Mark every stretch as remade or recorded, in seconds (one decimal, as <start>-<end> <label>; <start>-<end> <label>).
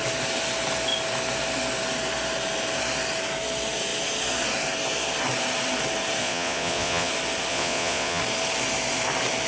0.0-6.2 recorded; 6.2-7.1 remade; 7.1-7.5 recorded; 7.5-8.2 remade; 8.2-9.5 recorded